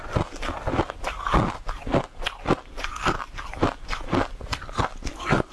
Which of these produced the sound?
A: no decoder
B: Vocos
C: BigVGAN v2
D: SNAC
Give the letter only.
A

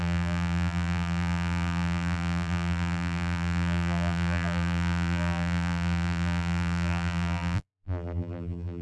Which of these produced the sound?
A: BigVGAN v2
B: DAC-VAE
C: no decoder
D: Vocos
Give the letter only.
A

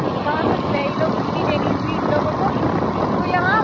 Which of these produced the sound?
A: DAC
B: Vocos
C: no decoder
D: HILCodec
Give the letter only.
C